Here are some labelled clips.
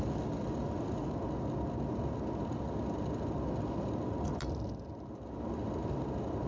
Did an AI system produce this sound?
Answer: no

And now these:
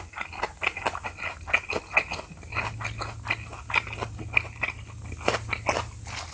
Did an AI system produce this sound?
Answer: no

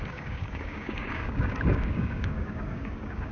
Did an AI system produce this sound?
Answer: yes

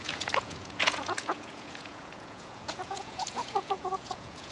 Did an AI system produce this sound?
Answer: yes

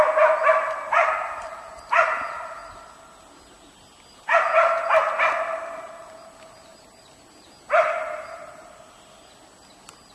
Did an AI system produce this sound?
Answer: no